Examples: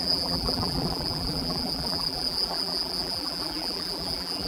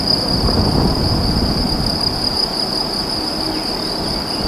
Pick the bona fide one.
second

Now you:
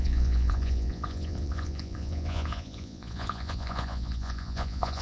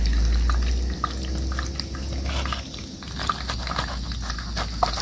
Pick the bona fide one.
second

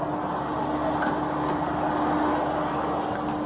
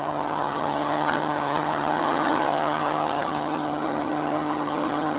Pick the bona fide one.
first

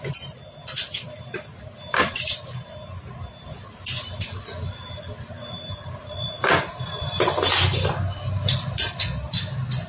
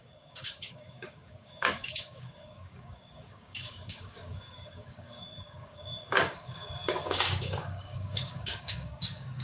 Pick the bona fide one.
first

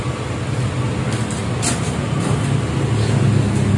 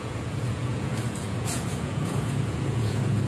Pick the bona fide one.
first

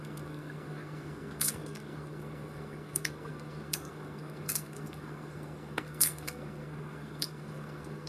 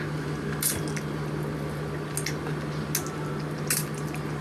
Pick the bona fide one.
second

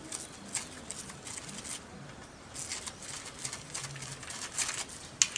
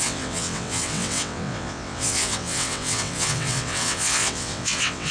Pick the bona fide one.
first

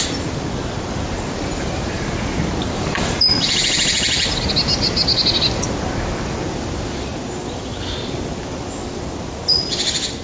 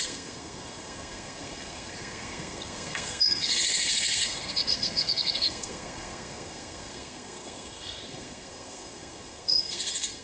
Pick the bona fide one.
first